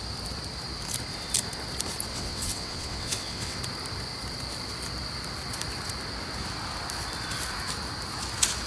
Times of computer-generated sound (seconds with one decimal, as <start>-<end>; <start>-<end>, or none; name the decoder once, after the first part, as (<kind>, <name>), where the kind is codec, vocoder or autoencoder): 2.1-3.6 (vocoder, WaveNeXt)